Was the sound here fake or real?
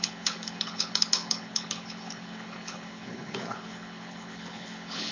fake